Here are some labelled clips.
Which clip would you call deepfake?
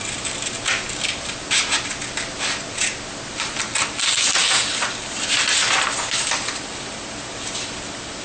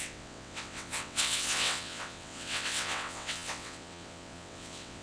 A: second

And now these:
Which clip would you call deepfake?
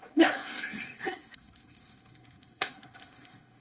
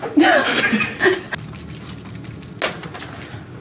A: first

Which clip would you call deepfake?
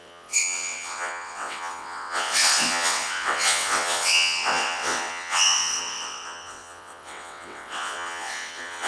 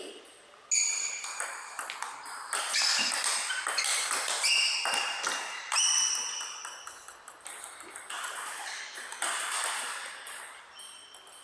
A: first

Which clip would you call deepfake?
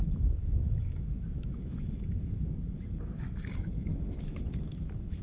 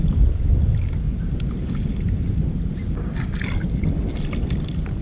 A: first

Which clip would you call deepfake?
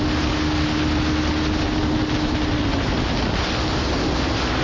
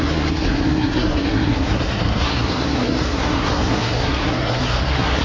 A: second